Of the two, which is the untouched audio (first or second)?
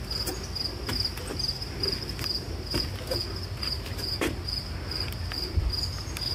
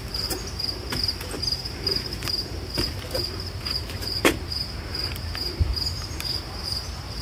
first